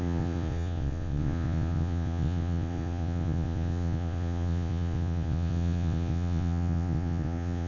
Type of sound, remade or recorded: remade